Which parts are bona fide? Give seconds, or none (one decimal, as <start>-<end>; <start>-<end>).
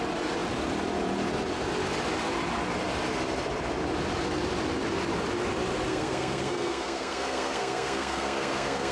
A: 0.0-5.9